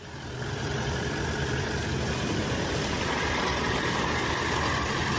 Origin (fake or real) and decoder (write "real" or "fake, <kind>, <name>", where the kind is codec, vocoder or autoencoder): real